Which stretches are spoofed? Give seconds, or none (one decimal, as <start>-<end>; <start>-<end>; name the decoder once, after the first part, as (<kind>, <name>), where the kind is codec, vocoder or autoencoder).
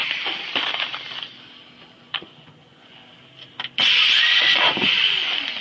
2.0-3.0 (vocoder, Vocos); 4.3-5.6